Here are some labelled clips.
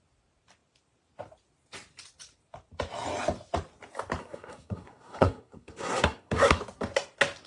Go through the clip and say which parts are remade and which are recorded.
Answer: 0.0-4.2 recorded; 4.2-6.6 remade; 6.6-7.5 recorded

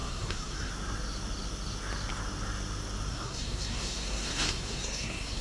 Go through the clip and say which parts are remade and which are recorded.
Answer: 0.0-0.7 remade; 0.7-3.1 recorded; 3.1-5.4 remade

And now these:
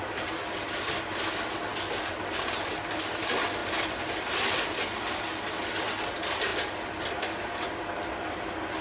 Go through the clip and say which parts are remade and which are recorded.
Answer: 0.0-8.8 recorded